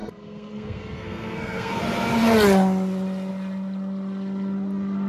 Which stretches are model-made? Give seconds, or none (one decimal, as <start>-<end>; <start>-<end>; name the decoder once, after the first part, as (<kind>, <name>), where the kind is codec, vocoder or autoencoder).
0.0-1.8 (codec, SNAC)